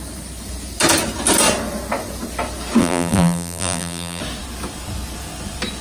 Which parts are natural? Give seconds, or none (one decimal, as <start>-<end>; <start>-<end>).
0.0-2.8; 4.2-5.8

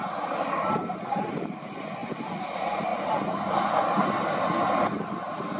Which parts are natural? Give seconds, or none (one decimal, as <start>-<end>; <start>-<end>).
2.9-3.5

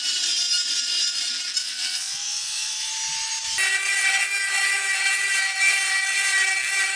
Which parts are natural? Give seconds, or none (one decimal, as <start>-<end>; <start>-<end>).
0.0-1.6; 2.9-7.0

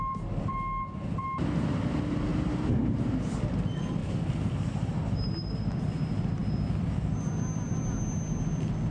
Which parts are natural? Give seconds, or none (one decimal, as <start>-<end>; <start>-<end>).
0.0-2.3; 3.1-4.0; 5.3-8.9

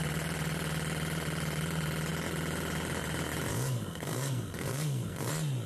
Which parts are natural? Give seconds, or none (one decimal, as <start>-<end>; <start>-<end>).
0.0-3.5; 5.3-5.7

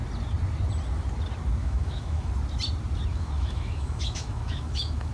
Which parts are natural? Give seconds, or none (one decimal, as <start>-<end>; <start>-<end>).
0.0-1.6; 2.3-3.1

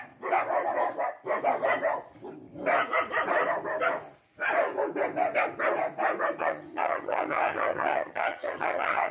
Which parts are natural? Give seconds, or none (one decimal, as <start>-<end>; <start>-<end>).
0.0-6.4

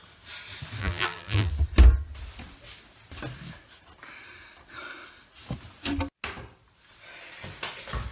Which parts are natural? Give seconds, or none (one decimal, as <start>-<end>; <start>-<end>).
0.0-0.8; 1.5-8.1